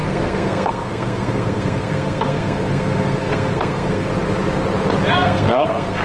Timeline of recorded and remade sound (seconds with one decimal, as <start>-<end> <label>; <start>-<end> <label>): 0.0-4.1 remade; 4.1-5.1 recorded; 5.1-6.0 remade